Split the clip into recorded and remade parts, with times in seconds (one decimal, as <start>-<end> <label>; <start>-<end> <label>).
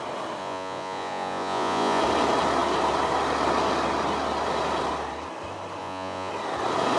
0.0-0.4 recorded; 0.4-2.0 remade; 2.0-5.8 recorded; 5.8-6.3 remade; 6.3-7.0 recorded